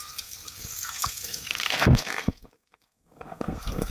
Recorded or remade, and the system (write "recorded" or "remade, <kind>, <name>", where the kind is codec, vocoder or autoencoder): remade, codec, SNAC